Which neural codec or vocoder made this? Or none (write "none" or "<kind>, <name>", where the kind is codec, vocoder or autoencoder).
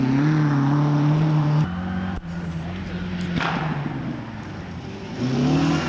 none